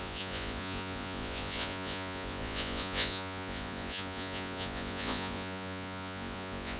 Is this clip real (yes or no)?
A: no